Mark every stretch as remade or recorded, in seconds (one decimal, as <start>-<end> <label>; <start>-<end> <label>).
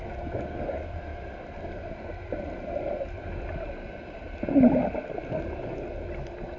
0.0-6.6 recorded